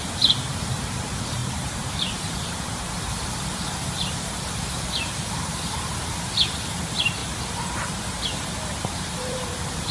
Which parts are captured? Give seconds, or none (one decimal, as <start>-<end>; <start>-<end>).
7.2-8.3